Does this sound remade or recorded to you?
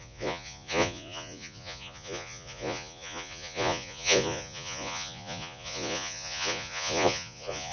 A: remade